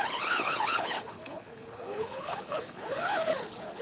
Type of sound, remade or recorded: remade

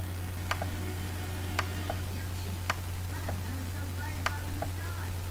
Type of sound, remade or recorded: recorded